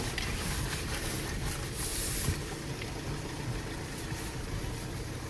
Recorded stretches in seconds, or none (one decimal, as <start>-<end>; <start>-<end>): 0.0-5.3